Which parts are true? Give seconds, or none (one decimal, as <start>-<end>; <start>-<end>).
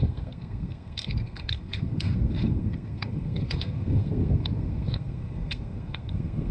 none